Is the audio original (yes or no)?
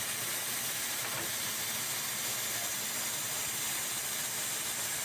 yes